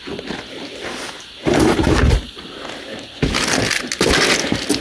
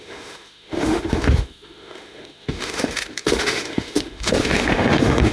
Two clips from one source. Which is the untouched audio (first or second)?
first